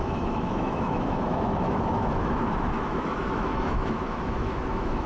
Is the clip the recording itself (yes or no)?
no